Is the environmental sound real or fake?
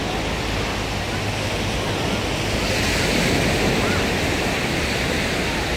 real